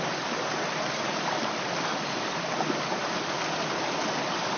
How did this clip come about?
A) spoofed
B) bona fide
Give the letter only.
B